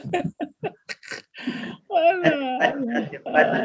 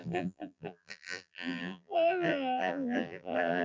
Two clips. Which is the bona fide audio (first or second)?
first